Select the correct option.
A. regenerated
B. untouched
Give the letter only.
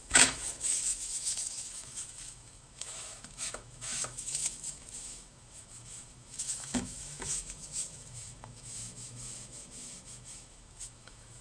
A